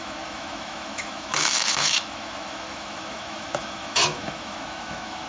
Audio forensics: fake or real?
fake